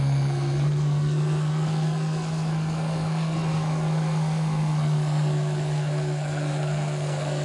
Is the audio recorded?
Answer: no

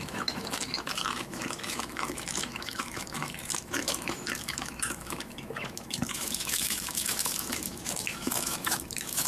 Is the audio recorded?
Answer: no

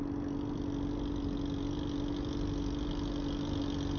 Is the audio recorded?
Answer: yes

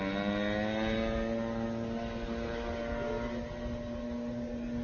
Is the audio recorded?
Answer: yes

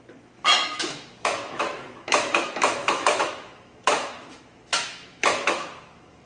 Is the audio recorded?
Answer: no